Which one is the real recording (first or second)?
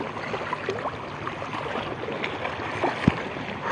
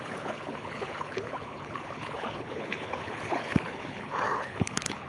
first